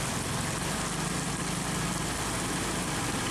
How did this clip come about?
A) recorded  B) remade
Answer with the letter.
A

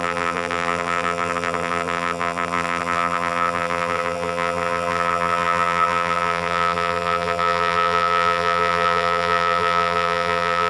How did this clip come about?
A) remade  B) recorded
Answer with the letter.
A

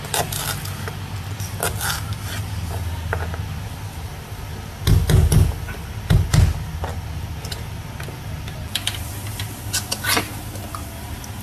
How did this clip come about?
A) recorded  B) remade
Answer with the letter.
A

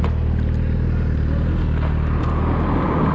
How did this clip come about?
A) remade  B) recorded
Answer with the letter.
B